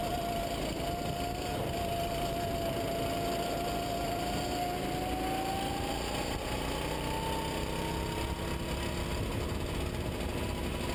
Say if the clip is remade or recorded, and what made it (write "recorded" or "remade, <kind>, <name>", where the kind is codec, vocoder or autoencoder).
recorded